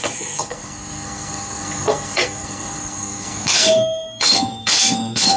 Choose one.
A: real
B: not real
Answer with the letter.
B